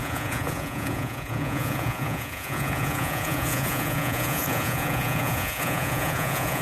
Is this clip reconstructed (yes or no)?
yes